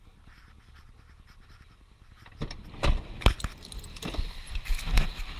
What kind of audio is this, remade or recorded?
recorded